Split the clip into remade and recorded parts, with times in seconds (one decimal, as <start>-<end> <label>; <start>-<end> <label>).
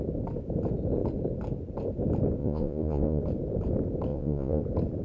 0.0-2.4 recorded; 2.4-3.2 remade; 3.2-4.1 recorded; 4.1-4.6 remade; 4.6-5.0 recorded